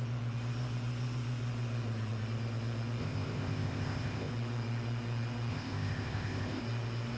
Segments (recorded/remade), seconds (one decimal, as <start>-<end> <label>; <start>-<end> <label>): 0.0-3.0 recorded; 3.0-4.3 remade; 4.3-5.5 recorded; 5.5-6.6 remade; 6.6-7.2 recorded